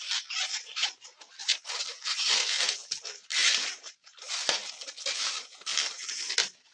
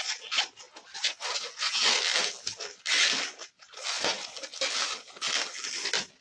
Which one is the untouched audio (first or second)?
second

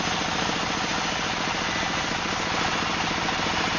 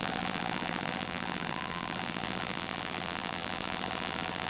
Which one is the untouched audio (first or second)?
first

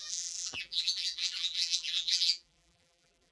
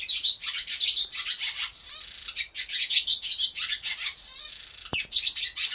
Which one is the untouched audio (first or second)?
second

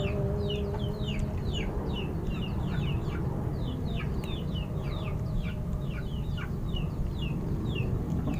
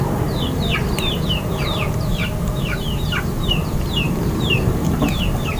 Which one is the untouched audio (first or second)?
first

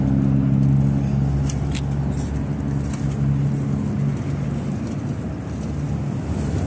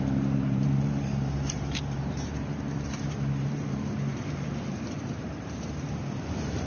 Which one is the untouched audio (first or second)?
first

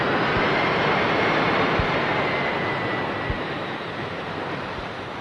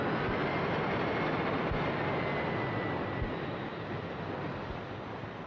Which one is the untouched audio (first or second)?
second